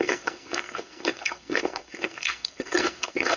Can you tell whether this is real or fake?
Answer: fake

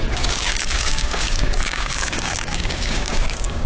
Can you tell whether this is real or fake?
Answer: fake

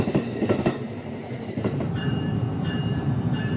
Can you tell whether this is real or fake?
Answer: fake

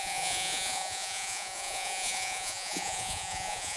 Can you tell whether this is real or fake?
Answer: fake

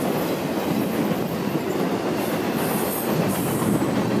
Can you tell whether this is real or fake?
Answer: real